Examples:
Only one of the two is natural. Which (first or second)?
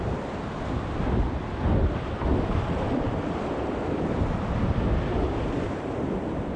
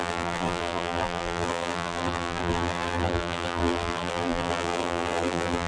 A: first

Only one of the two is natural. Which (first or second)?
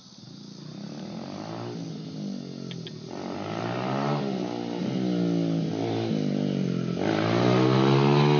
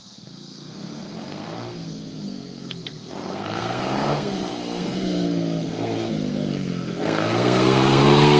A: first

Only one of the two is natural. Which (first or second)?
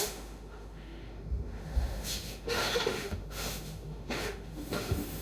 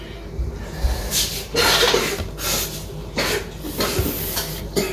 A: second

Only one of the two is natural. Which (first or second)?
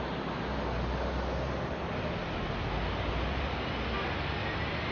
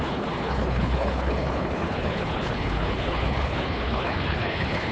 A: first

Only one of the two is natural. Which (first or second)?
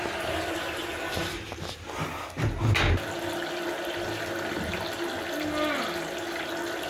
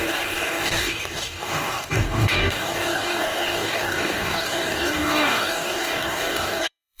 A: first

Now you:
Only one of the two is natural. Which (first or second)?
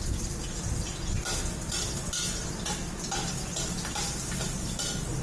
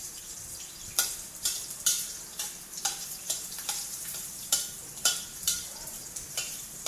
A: first